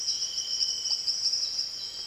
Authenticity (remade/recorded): recorded